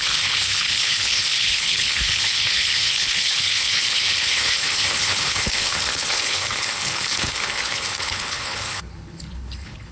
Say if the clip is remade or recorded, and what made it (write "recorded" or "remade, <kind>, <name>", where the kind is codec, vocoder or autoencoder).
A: remade, codec, HILCodec